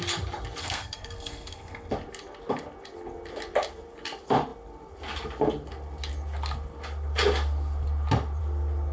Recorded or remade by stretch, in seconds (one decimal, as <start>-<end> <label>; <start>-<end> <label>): 0.0-0.6 recorded; 0.6-1.9 remade; 1.9-8.9 recorded